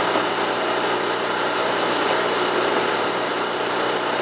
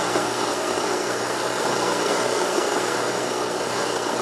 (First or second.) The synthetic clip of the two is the second